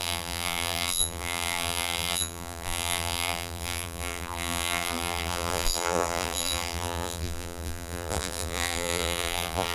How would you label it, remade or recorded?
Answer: remade